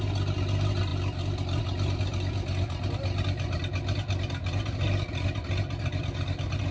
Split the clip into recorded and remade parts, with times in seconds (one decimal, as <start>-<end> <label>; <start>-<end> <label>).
0.0-6.7 recorded